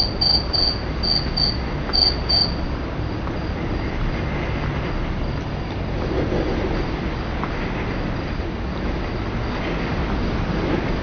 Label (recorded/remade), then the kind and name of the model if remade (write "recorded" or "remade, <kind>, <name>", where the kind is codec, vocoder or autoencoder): recorded